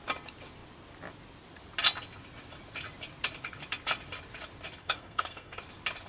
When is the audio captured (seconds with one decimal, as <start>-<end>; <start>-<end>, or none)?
0.0-4.8; 5.6-6.1